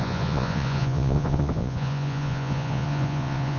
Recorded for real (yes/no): no